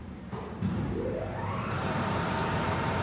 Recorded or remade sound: remade